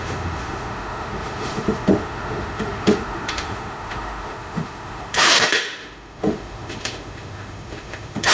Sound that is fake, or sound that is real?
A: fake